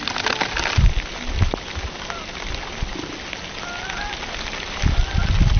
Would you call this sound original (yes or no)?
yes